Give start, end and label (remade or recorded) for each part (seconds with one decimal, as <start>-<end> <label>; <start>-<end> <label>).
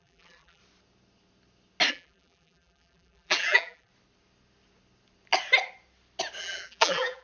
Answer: 0.0-0.6 remade; 0.6-1.9 recorded; 1.9-3.9 remade; 3.9-6.4 recorded; 6.4-7.2 remade